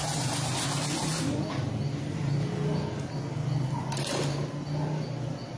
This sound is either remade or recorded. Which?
recorded